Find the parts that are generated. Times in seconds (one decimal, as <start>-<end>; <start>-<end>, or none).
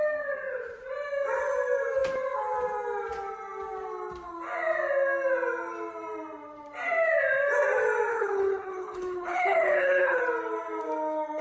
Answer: 8.1-10.2